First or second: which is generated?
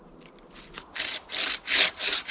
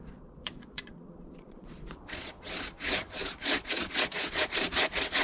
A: second